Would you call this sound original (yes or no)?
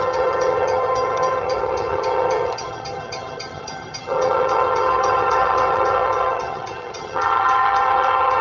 no